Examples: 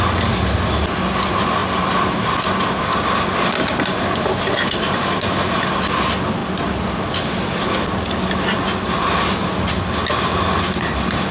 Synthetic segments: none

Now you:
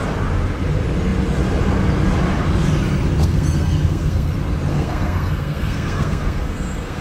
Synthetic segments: 3.2-4.3 (codec, SNAC); 4.7-7.0

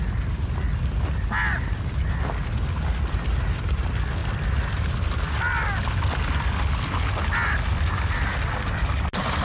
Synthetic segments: none